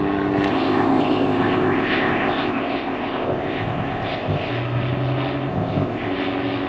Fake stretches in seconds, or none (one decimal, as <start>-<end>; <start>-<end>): 0.5-4.5; 5.5-6.1

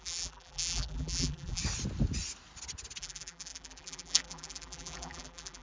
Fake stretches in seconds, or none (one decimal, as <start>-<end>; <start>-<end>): 0.0-1.6; 3.0-5.6

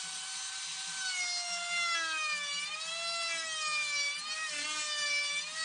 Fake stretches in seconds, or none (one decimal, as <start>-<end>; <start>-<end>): none

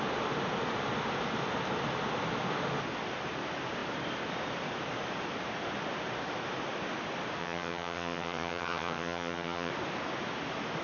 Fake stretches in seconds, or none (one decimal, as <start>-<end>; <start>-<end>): 7.4-9.7

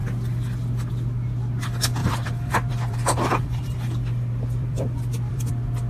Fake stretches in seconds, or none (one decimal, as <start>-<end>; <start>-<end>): 2.0-5.5

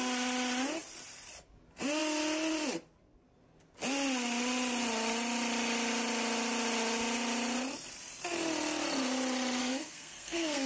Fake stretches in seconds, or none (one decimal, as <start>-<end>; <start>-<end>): 9.6-10.7

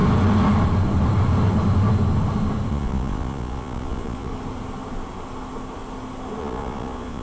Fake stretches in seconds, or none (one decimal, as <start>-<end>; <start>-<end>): 2.7-4.3; 6.4-7.2

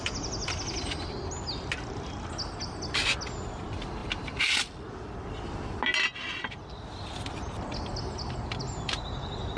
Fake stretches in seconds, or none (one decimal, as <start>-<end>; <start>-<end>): none